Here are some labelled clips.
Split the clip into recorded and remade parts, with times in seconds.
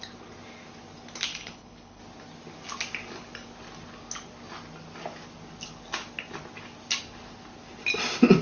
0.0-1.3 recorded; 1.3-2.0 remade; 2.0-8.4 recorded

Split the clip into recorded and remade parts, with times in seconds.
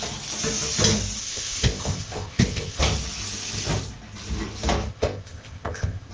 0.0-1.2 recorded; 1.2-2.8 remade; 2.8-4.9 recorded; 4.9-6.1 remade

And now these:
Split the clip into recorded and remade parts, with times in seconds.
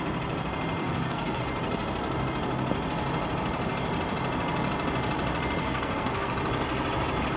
0.0-0.8 recorded; 0.8-1.4 remade; 1.4-5.6 recorded; 5.6-6.3 remade; 6.3-7.4 recorded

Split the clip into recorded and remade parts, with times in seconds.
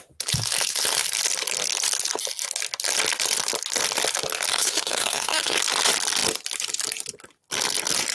0.0-4.5 recorded; 4.5-5.6 remade; 5.6-8.1 recorded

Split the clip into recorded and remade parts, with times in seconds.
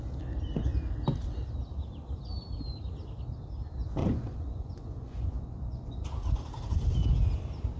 0.0-4.0 recorded; 4.0-6.0 remade; 6.0-7.8 recorded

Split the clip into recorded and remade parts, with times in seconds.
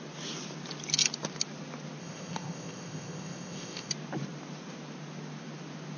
0.0-2.0 recorded; 2.0-3.9 remade; 3.9-6.0 recorded